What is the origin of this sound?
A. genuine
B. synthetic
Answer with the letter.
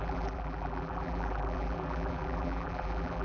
B